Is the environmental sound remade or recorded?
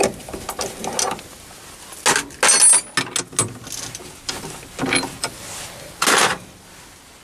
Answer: recorded